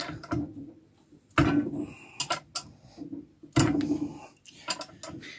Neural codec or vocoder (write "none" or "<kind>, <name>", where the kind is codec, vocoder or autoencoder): none